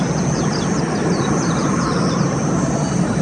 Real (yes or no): yes